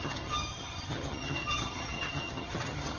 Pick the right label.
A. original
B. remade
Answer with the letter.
B